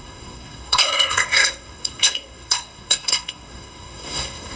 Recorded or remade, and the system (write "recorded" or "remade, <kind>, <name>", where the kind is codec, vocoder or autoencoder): remade, codec, SNAC